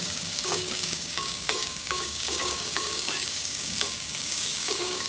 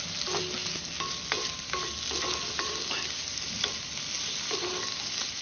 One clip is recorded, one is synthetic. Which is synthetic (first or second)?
first